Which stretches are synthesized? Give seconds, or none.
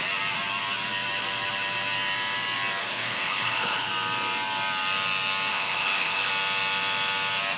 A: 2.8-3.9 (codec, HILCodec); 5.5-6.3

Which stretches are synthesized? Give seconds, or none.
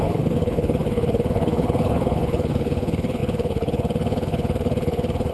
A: 0.0-5.3 (codec, HILCodec)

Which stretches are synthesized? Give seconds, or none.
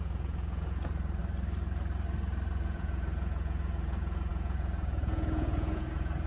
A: 0.0-1.2 (vocoder, Vocos); 2.5-6.3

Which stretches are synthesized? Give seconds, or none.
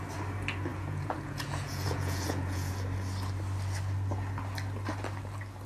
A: 0.7-2.7 (vocoder, Vocos)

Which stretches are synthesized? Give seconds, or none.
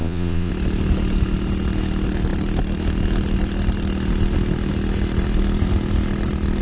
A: 0.0-0.5 (vocoder, Vocos)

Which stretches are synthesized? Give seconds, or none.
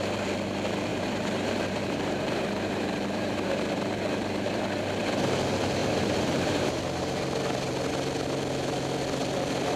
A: 0.9-4.6 (vocoder, BigVGAN v2); 5.8-7.0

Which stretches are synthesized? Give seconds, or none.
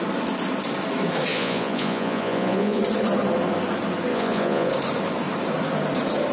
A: 1.3-2.8 (vocoder, Vocos); 4.1-4.7